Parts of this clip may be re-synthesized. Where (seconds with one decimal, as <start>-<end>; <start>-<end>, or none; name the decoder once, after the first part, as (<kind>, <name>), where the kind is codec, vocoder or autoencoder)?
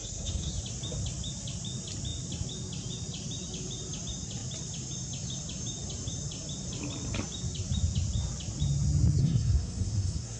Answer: 0.0-0.5 (codec, SNAC); 9.2-10.4